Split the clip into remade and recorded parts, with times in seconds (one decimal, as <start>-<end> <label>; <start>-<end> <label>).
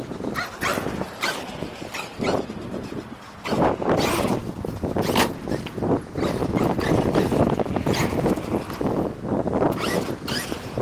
0.0-0.7 recorded; 0.7-4.0 remade; 4.0-6.4 recorded; 6.4-6.9 remade; 6.9-10.8 recorded